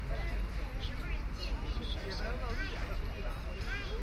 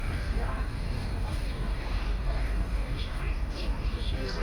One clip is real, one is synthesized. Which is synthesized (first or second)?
second